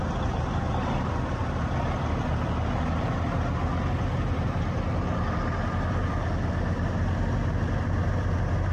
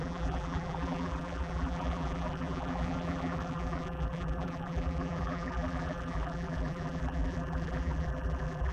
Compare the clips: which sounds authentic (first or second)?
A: first